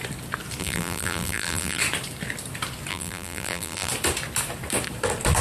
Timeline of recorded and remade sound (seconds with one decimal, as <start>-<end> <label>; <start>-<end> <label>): 0.0-0.6 recorded; 0.6-1.8 remade; 1.8-2.9 recorded; 2.9-3.9 remade; 3.9-5.4 recorded